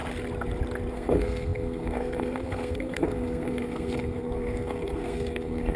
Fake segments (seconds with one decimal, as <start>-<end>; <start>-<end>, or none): 0.9-5.8